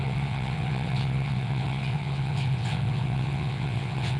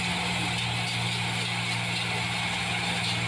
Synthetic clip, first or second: first